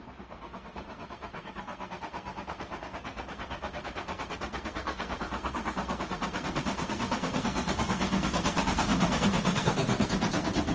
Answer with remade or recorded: remade